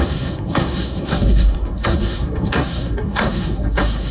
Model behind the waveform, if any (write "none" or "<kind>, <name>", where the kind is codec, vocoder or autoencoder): codec, SNAC